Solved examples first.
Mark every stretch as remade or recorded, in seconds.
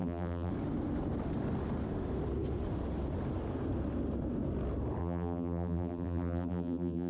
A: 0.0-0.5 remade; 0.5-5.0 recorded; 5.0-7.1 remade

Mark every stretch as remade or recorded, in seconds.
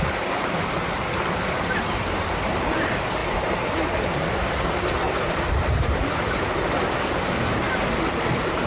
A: 0.0-8.7 remade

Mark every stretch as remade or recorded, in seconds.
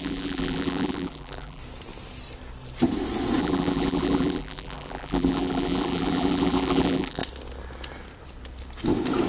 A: 0.0-1.6 remade; 1.6-3.4 recorded; 3.4-7.2 remade; 7.2-9.3 recorded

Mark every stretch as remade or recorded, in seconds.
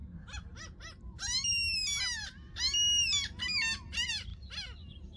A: 0.0-5.2 recorded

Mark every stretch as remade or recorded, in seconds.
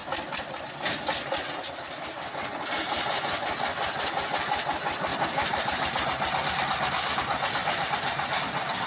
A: 0.0-5.1 recorded; 5.1-8.4 remade; 8.4-8.9 recorded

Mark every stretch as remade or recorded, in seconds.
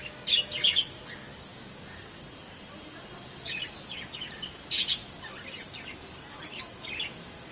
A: 0.0-5.0 recorded; 5.0-7.5 remade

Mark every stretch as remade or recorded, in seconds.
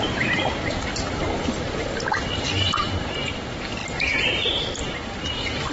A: 0.0-5.7 remade